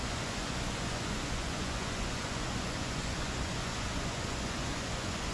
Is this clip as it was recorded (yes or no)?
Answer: no